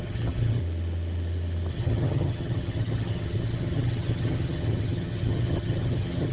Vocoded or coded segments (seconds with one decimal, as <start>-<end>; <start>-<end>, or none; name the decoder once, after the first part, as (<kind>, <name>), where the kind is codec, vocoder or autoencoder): 0.0-0.6 (vocoder, HiFi-GAN); 1.7-6.3